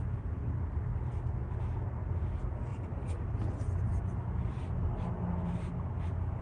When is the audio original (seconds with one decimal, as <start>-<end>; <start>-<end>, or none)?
0.0-2.7; 3.3-6.4